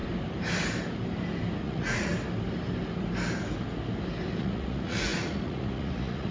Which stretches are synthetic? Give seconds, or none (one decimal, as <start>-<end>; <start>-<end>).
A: 1.6-2.1; 4.4-6.3